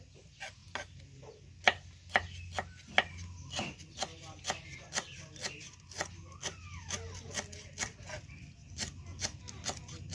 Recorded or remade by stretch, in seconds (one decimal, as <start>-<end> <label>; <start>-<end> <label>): 0.0-10.1 recorded